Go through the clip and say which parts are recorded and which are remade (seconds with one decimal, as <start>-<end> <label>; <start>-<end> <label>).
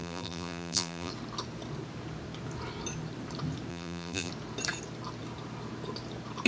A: 0.0-1.1 remade; 1.1-3.7 recorded; 3.7-4.3 remade; 4.3-6.5 recorded